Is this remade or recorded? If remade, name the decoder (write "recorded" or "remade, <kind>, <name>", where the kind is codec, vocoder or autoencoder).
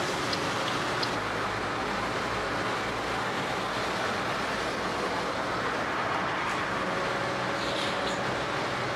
recorded